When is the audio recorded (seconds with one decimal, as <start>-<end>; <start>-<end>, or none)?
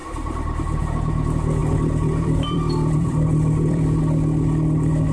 0.0-1.6; 4.0-5.1